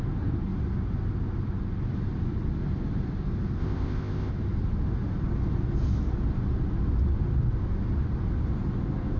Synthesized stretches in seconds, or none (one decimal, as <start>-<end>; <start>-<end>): 3.6-4.3